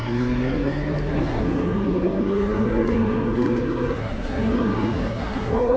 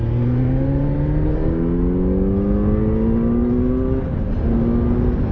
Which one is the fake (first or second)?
first